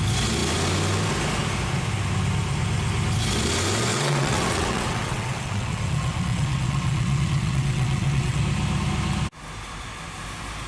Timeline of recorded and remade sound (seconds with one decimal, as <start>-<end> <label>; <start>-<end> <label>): 0.0-3.9 recorded; 3.9-8.4 remade; 8.4-10.7 recorded

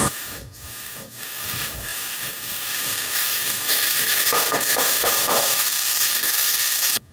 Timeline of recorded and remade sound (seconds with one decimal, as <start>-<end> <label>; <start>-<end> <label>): 0.0-7.1 remade

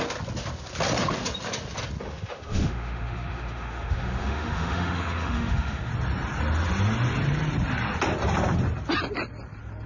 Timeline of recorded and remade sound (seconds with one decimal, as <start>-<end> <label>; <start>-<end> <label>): 0.0-2.0 recorded; 2.0-5.9 remade; 5.9-9.9 recorded

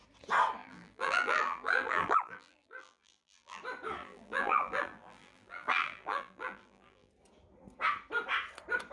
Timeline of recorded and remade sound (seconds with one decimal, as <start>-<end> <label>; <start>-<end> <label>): 0.0-0.6 recorded; 0.6-3.6 remade; 3.6-4.0 recorded; 4.0-7.1 remade; 7.1-8.9 recorded

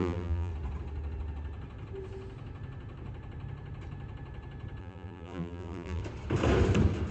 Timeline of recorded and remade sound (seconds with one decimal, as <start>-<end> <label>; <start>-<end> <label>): 0.0-0.5 remade; 0.5-4.8 recorded; 4.8-6.0 remade; 6.0-7.1 recorded